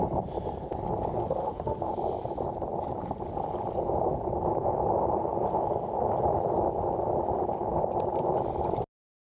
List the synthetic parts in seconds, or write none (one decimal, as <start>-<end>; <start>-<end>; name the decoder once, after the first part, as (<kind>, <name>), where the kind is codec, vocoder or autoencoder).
1.2-1.9 (autoencoder, DAC-VAE)